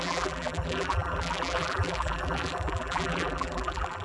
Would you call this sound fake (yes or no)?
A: yes